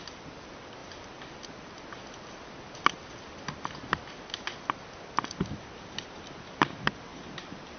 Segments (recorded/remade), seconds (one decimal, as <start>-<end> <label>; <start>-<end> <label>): 0.0-7.1 recorded; 7.1-7.8 remade